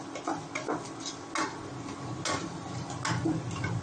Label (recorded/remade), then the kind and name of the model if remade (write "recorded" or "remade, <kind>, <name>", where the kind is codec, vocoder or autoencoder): recorded